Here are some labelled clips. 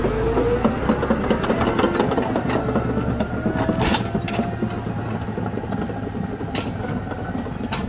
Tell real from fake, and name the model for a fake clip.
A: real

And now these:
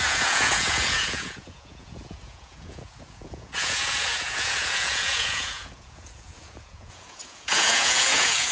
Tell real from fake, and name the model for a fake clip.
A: fake, vocoder, Vocos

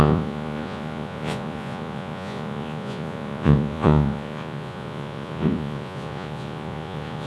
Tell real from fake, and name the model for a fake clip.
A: fake, vocoder, Vocos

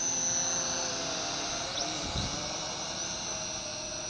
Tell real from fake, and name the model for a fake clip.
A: real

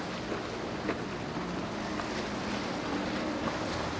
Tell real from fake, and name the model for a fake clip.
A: real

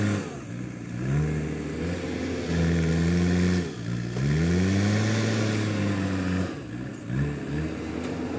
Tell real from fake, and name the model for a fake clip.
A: real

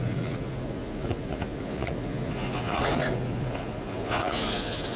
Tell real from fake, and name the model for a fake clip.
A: fake, vocoder, Vocos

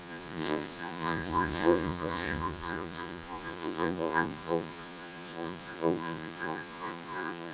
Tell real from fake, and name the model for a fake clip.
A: fake, vocoder, Vocos